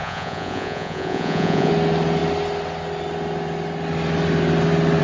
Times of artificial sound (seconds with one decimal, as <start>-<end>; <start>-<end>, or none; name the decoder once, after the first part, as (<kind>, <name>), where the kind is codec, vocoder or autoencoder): 0.0-1.7 (vocoder, Vocos)